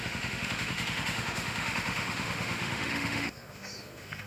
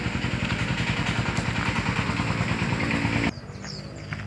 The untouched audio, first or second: second